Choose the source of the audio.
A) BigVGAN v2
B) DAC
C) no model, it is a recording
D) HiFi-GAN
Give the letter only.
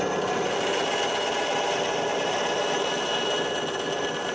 C